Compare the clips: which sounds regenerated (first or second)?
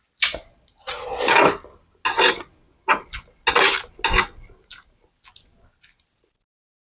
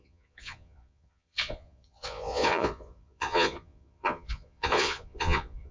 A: second